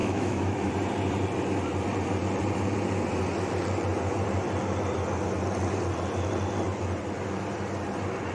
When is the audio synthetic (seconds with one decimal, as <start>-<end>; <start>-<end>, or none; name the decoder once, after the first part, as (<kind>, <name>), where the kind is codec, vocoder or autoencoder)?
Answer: 0.0-0.7 (autoencoder, DAC-VAE)